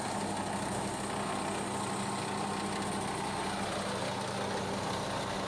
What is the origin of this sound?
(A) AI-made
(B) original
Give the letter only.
B